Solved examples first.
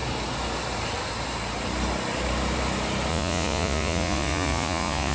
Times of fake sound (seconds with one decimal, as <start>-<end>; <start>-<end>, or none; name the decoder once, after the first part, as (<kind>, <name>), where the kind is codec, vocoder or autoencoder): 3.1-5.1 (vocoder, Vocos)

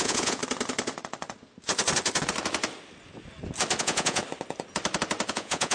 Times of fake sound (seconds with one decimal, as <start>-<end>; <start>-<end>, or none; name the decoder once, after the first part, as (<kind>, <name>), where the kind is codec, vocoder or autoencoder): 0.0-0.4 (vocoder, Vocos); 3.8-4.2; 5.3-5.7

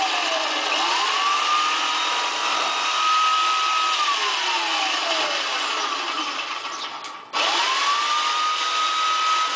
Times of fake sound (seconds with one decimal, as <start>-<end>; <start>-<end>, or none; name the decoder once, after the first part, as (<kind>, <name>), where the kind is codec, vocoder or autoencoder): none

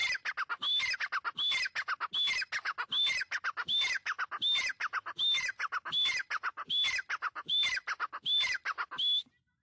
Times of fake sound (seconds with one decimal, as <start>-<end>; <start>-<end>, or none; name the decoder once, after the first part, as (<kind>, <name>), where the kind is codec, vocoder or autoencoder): none